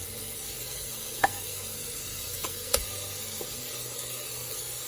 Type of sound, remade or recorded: remade